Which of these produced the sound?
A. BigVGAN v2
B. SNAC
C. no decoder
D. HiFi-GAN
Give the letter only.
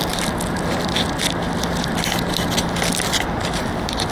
C